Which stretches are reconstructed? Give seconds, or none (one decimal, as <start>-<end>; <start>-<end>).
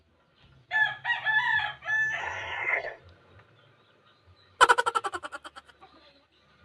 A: 2.2-3.0